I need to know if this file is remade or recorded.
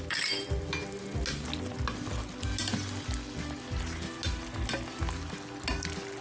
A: recorded